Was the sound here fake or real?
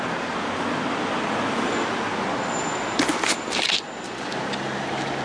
real